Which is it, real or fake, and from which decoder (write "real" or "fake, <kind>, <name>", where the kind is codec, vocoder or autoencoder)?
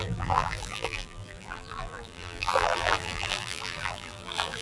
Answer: fake, vocoder, BigVGAN v2